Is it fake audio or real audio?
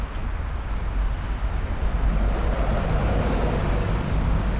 real